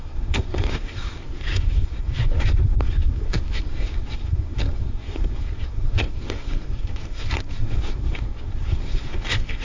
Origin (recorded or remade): remade